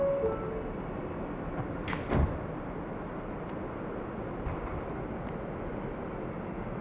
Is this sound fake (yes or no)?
no